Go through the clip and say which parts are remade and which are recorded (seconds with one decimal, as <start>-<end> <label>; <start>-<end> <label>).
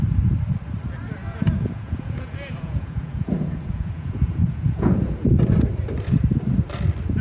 0.0-1.2 recorded; 1.2-5.3 remade; 5.3-7.2 recorded